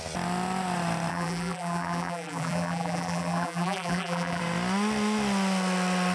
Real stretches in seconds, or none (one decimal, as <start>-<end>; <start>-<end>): 0.0-1.1; 4.4-6.1